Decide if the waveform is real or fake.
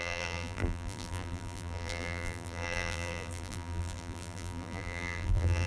fake